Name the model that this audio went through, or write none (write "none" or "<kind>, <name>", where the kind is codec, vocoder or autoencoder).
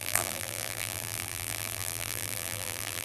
vocoder, BigVGAN v2